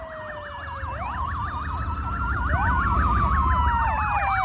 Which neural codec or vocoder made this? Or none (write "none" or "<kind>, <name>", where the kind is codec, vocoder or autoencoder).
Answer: none